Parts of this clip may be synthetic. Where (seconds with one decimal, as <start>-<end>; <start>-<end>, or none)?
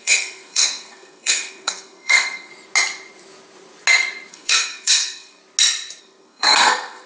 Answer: 0.0-2.5; 4.3-5.4; 6.0-7.1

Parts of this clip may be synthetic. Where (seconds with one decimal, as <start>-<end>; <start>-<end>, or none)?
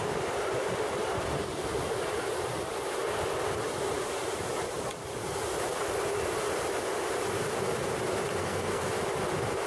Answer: 8.4-8.9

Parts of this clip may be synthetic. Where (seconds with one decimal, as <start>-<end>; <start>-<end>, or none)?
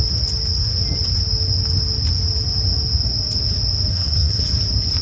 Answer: 3.9-4.4